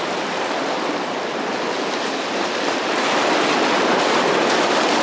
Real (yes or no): yes